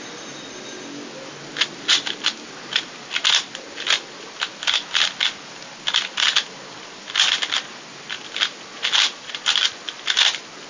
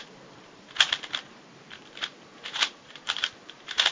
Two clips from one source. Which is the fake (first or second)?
second